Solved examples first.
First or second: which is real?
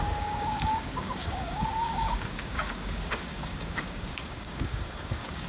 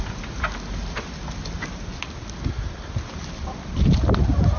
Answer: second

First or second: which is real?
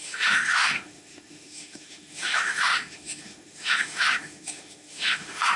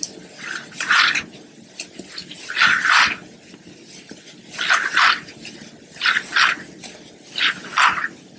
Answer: second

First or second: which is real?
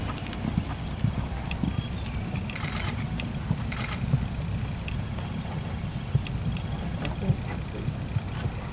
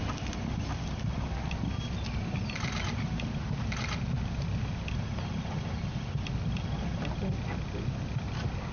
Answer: second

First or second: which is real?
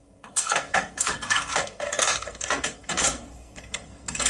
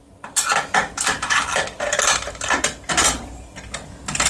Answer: second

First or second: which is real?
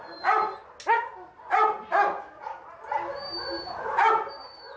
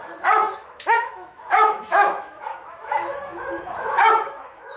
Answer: first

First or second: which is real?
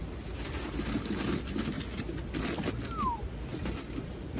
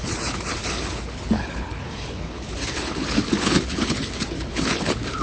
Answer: first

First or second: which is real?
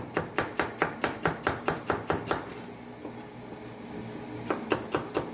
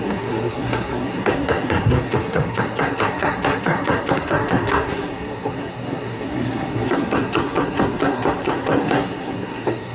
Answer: first